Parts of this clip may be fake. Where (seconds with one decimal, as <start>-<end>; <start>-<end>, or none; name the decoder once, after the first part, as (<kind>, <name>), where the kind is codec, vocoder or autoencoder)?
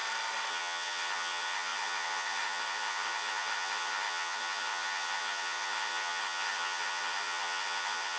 0.5-8.2 (vocoder, HiFi-GAN)